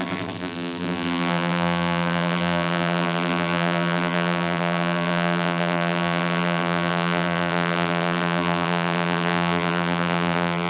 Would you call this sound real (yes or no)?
no